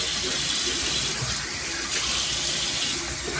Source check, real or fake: real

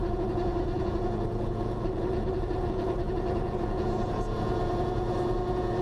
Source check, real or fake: fake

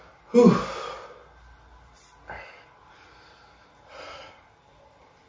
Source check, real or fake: real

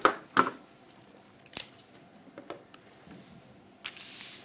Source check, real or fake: real